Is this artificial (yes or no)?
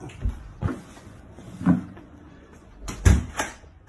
yes